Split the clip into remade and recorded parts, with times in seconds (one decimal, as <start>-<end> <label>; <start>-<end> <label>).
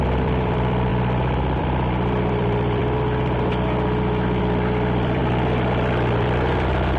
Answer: 0.0-0.9 remade; 0.9-1.6 recorded; 1.6-2.8 remade; 2.8-4.4 recorded; 4.4-5.2 remade; 5.2-7.0 recorded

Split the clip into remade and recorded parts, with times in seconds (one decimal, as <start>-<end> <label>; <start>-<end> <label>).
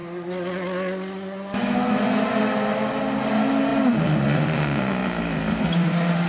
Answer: 0.0-5.0 recorded; 5.0-6.3 remade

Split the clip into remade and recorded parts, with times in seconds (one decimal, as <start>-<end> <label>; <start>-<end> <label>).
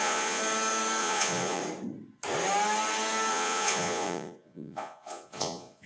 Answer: 0.0-0.4 remade; 0.4-1.0 recorded; 1.0-1.6 remade; 1.6-3.3 recorded; 3.3-5.9 remade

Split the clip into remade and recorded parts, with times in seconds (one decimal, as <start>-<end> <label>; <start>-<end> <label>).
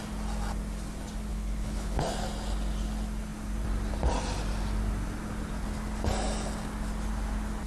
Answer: 0.0-1.3 recorded; 1.3-2.0 remade; 2.0-7.7 recorded